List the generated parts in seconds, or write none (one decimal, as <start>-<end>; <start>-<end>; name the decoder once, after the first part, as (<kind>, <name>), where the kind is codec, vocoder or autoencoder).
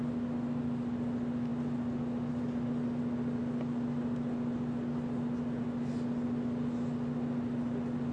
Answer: none